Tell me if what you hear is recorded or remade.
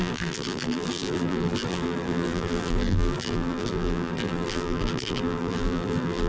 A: remade